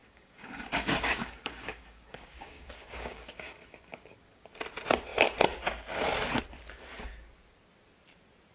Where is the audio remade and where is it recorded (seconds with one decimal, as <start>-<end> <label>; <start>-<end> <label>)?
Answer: 0.0-4.5 remade; 4.5-8.5 recorded